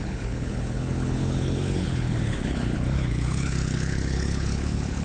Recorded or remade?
remade